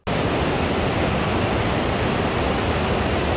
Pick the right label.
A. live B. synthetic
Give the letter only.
A